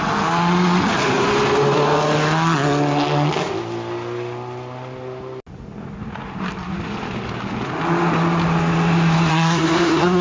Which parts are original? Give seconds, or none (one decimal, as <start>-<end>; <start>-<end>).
0.0-9.3

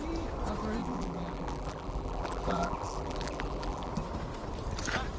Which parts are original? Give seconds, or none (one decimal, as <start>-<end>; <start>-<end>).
0.0-0.8; 3.9-5.2

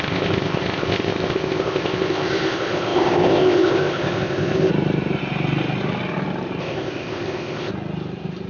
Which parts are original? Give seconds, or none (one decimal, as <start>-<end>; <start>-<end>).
4.7-6.6; 7.7-8.5